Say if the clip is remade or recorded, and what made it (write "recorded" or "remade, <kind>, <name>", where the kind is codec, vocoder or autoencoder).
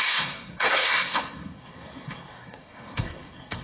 remade, codec, SNAC